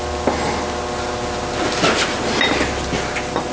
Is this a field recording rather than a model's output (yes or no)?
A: yes